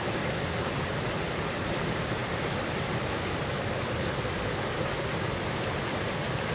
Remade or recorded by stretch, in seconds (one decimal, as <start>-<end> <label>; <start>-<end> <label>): 0.0-6.5 recorded